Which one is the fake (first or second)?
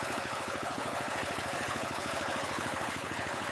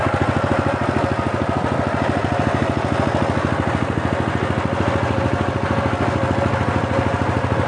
first